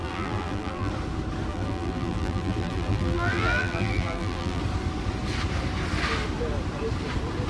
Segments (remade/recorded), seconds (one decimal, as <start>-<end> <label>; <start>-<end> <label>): 0.0-0.9 remade; 0.9-1.5 recorded; 1.5-4.6 remade; 4.6-7.5 recorded